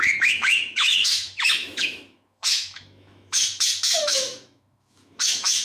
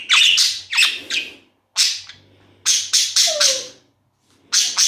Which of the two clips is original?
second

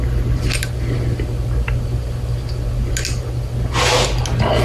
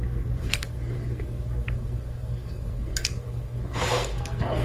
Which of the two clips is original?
first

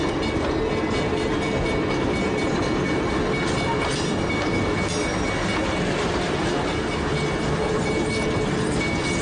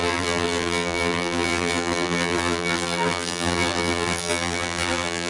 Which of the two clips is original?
first